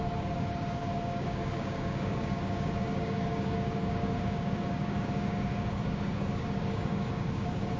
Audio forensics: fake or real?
fake